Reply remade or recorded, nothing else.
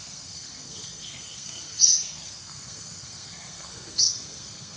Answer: remade